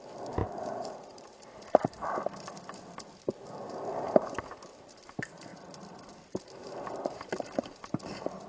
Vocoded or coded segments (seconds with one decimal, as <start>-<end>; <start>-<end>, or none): 0.4-1.4